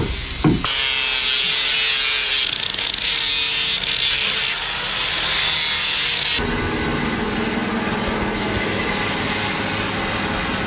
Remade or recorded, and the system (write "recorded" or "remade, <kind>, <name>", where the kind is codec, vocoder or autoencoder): recorded